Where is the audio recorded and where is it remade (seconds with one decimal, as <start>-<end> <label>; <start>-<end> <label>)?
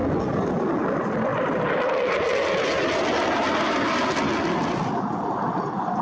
0.0-6.0 recorded